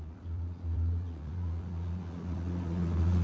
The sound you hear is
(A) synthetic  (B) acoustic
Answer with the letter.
A